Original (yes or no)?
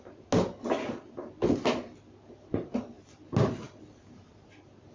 yes